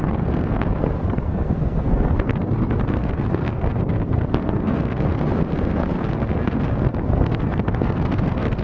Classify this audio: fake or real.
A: fake